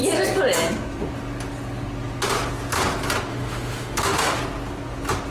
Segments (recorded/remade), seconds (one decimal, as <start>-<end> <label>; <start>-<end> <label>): 0.0-3.3 recorded; 3.3-4.4 remade; 4.4-5.3 recorded